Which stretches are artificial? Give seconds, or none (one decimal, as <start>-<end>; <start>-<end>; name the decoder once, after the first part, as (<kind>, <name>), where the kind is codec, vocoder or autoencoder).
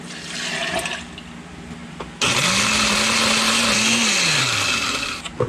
none